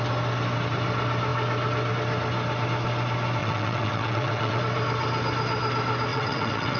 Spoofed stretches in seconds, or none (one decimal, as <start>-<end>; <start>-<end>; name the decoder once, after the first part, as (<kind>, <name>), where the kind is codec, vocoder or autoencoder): 3.4-4.6 (vocoder, WaveNeXt); 6.1-6.8